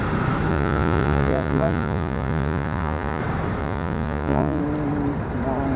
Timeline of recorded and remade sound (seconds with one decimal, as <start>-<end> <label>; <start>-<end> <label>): 0.0-0.5 recorded; 0.5-3.2 remade; 3.2-3.6 recorded; 3.6-4.6 remade; 4.6-5.8 recorded